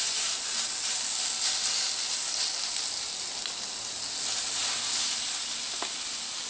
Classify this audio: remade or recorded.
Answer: recorded